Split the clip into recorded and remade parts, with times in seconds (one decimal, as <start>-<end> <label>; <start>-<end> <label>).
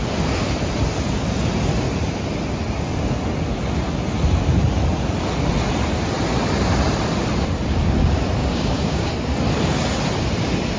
0.0-8.4 recorded; 8.4-9.1 remade; 9.1-10.8 recorded